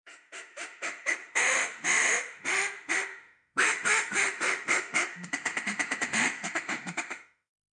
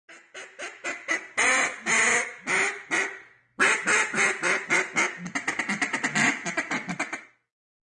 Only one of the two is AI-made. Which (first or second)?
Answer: first